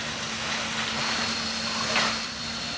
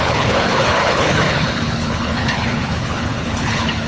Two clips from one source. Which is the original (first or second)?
first